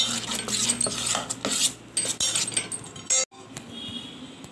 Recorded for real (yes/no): yes